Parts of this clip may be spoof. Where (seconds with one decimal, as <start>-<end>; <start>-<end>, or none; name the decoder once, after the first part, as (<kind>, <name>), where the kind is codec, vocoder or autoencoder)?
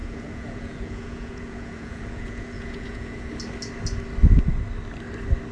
0.0-3.3 (vocoder, Vocos)